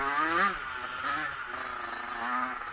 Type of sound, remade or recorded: recorded